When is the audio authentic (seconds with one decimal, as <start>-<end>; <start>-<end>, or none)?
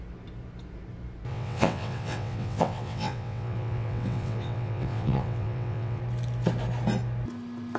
0.0-1.3; 6.0-7.8